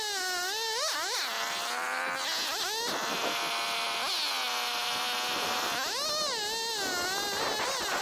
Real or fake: real